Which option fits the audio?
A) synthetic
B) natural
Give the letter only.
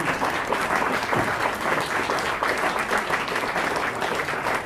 B